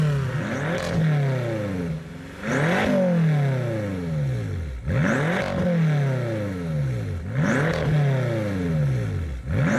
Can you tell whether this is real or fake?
real